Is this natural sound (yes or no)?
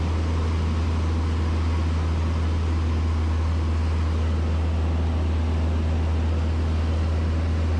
yes